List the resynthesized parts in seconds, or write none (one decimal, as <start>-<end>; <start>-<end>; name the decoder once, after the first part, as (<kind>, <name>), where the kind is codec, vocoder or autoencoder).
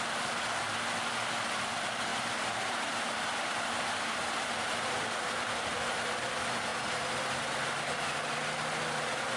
2.1-5.6 (vocoder, BigVGAN v2)